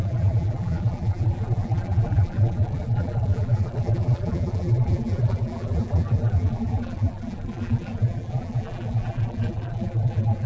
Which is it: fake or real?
fake